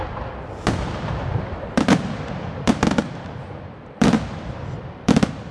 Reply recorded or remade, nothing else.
remade